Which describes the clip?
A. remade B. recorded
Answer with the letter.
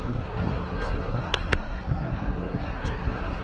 A